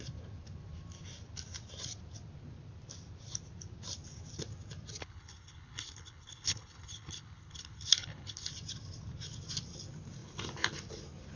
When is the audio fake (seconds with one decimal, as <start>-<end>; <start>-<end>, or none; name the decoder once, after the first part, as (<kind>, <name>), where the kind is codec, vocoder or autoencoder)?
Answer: 5.0-8.5 (codec, HILCodec)